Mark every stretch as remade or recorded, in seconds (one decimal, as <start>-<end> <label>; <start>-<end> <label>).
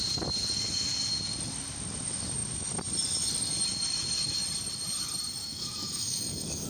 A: 0.0-5.4 recorded; 5.4-6.7 remade